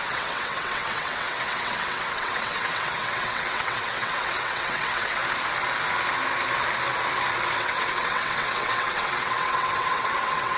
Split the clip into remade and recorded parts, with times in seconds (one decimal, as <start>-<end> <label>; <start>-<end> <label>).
0.0-5.2 remade; 5.2-7.5 recorded; 7.5-10.6 remade